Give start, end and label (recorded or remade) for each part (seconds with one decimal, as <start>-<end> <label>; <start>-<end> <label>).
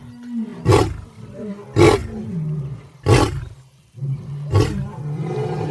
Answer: 0.0-5.7 recorded